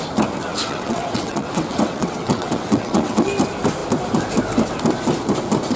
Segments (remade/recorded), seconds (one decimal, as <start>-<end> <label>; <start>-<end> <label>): 0.0-0.5 recorded; 0.5-3.3 remade; 3.3-5.8 recorded